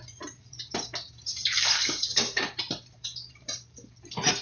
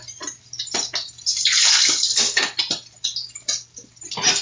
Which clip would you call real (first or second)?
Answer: second